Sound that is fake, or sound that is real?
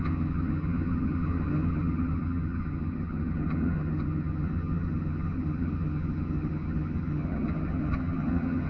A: fake